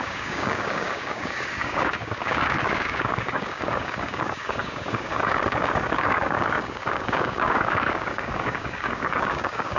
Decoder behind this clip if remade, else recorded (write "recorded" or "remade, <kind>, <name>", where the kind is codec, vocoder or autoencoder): remade, codec, DAC